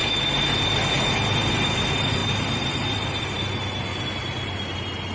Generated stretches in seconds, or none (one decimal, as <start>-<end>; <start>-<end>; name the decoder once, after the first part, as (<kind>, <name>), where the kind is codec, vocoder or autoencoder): none